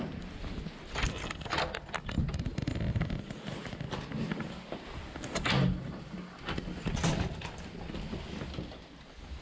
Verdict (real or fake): real